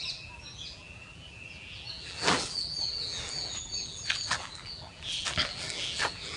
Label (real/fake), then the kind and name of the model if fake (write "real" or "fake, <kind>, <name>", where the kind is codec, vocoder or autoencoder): fake, vocoder, BigVGAN v2